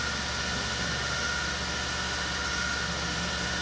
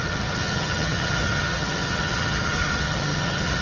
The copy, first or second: second